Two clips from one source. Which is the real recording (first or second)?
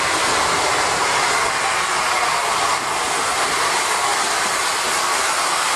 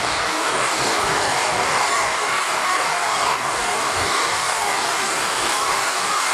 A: first